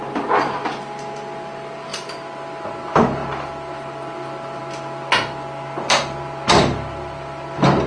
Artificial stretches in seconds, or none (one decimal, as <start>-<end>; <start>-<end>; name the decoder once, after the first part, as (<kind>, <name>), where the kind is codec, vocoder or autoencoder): none